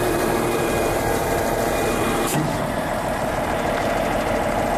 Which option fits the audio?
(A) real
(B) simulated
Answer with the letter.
B